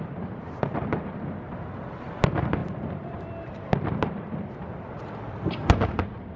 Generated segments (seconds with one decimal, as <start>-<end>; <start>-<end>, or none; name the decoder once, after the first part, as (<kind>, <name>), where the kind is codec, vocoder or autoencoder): none